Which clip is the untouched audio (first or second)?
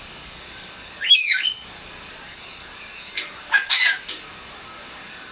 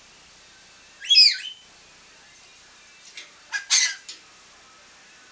second